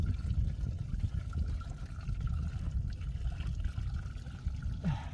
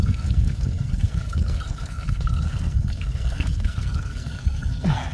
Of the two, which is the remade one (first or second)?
second